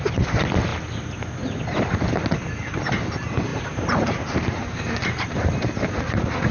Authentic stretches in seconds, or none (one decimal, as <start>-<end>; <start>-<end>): 0.0-3.5; 6.0-6.5